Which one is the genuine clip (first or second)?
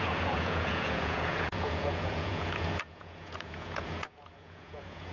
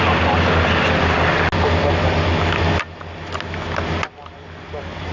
second